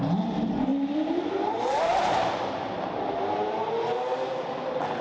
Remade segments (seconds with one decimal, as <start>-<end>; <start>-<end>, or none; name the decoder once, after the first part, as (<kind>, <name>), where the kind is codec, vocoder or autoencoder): 0.7-2.3 (vocoder, BigVGAN v2)